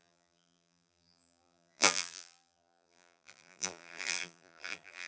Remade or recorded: remade